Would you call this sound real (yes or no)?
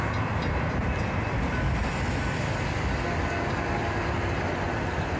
yes